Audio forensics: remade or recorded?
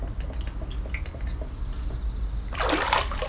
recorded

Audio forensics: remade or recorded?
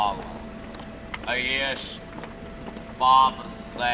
recorded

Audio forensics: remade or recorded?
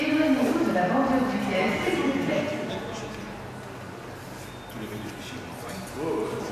recorded